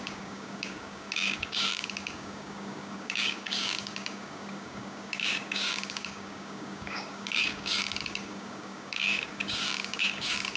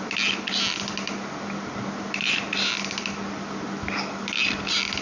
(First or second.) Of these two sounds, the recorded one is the second